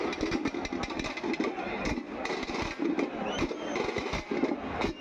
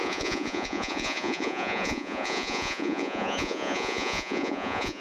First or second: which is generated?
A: second